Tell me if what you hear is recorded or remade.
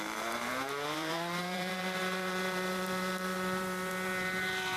remade